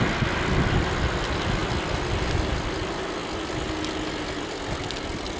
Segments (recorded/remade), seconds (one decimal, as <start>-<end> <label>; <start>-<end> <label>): 0.0-5.4 recorded